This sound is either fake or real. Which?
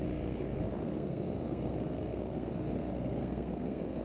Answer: fake